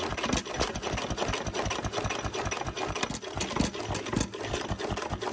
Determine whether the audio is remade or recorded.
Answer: recorded